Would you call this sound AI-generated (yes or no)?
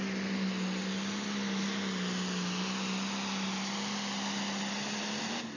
no